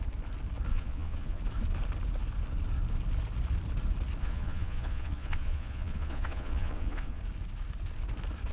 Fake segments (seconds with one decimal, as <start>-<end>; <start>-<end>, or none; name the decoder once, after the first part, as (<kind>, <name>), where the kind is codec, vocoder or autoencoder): 0.7-1.4 (vocoder, Vocos); 4.2-7.2